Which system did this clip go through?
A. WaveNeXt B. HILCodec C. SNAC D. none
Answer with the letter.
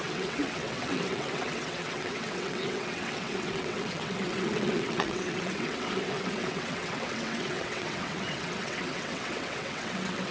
A